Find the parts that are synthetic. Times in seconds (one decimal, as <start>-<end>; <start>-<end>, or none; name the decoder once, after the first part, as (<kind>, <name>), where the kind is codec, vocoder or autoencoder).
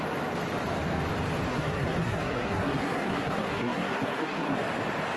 1.5-4.6 (codec, SNAC)